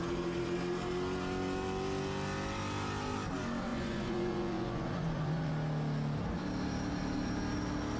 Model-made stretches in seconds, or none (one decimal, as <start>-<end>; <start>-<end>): 3.7-5.5